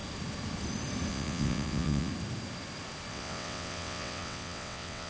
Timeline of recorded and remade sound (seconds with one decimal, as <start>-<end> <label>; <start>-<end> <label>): 0.0-1.1 recorded; 1.1-2.1 remade; 2.1-3.1 recorded; 3.1-5.1 remade